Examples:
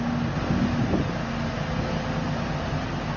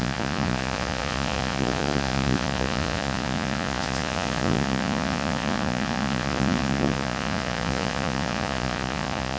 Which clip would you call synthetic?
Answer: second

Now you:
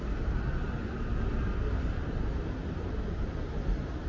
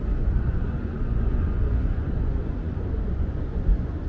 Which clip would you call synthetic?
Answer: second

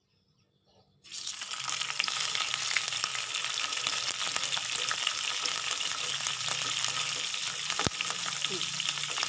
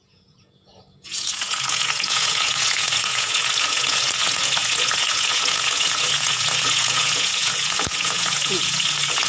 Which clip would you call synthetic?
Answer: second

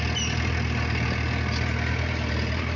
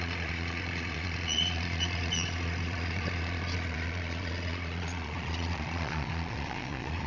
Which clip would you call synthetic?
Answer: second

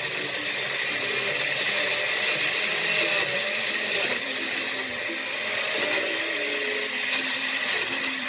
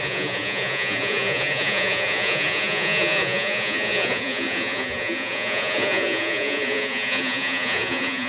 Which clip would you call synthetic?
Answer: second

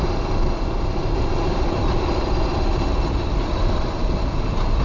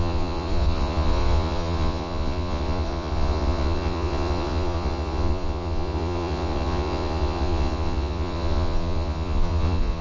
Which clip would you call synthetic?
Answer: second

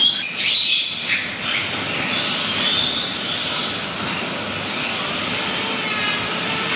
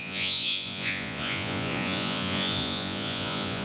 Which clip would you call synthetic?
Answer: second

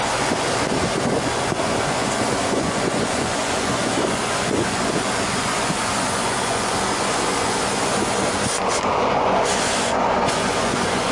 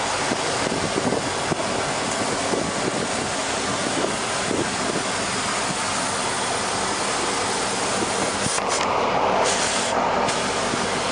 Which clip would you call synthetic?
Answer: first